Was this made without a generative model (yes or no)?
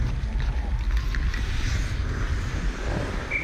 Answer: yes